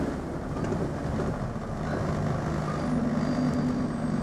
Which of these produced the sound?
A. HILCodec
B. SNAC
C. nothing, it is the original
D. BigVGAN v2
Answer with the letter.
C